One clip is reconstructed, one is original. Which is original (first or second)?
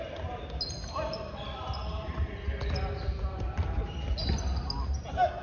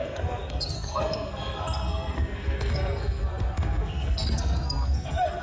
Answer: first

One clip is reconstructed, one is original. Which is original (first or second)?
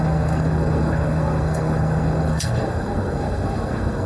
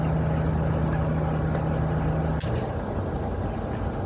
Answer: second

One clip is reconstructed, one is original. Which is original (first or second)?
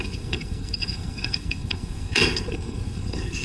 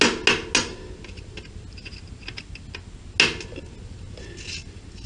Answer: second